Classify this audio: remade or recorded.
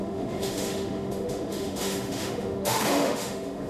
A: remade